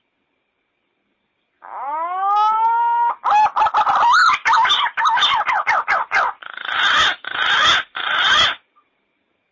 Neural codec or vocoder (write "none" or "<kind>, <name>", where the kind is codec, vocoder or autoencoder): none